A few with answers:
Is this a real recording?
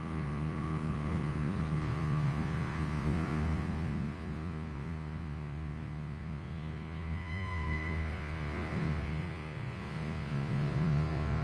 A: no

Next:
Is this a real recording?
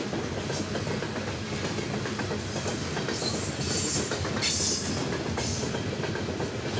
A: yes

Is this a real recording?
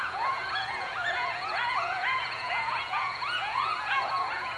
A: no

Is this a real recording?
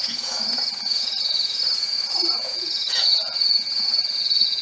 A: no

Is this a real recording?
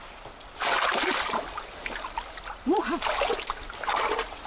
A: yes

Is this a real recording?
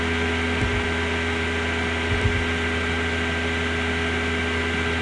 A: yes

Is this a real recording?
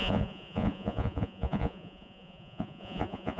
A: no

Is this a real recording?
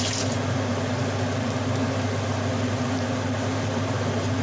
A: yes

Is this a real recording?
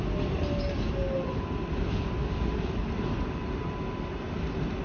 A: yes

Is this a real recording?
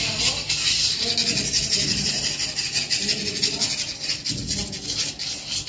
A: yes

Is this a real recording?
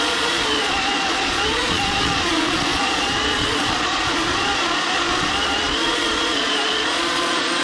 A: no